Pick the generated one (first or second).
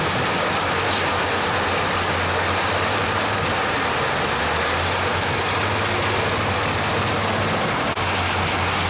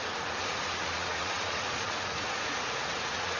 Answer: second